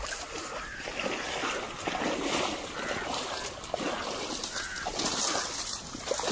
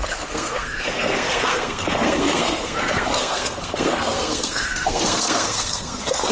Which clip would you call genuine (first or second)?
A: first